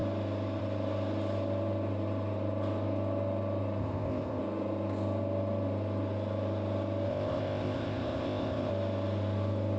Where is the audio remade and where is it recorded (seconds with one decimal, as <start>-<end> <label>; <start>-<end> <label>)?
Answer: 0.0-3.8 recorded; 3.8-4.4 remade; 4.4-7.1 recorded; 7.1-8.7 remade; 8.7-9.8 recorded